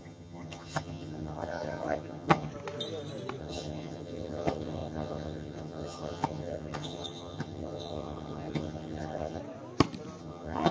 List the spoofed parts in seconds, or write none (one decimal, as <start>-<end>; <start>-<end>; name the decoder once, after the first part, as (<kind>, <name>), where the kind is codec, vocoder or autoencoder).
0.0-2.5 (vocoder, HiFi-GAN); 3.4-9.4; 10.2-10.7